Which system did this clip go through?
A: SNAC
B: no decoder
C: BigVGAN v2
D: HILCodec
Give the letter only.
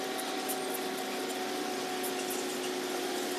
B